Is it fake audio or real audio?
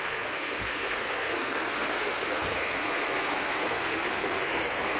fake